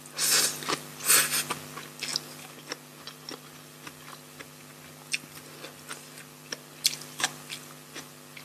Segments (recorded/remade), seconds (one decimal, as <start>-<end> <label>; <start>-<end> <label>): 0.0-8.4 recorded